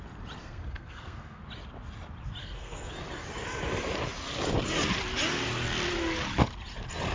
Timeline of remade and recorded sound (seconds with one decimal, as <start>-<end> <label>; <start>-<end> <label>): 0.0-0.4 recorded; 0.4-1.4 remade; 1.4-2.4 recorded; 2.4-2.9 remade; 2.9-7.1 recorded